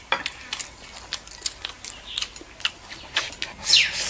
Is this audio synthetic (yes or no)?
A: no